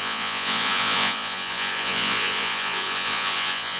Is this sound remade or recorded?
remade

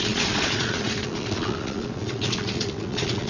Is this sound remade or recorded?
remade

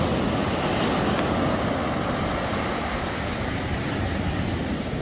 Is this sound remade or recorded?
recorded